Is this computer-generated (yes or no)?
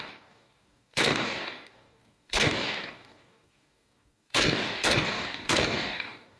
yes